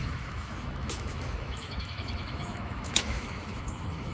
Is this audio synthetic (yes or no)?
yes